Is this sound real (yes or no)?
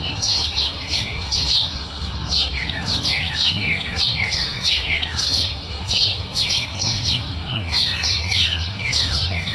no